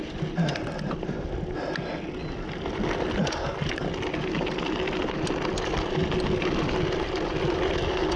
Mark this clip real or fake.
real